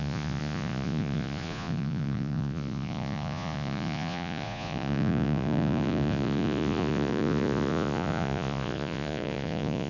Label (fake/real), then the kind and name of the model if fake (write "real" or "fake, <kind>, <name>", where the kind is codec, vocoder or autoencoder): fake, vocoder, Vocos